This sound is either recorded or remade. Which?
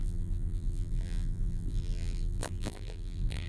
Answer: remade